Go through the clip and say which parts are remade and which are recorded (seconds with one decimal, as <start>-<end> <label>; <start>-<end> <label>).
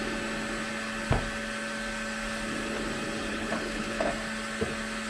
0.0-3.3 recorded; 3.3-4.1 remade; 4.1-5.1 recorded